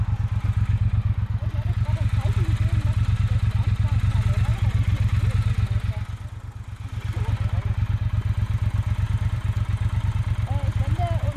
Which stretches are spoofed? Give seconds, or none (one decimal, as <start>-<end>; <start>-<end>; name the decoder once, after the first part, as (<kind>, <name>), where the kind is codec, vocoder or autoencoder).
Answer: none